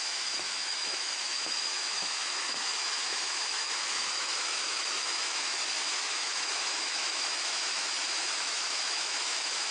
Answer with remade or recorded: remade